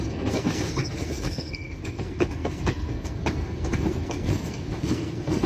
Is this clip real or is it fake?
fake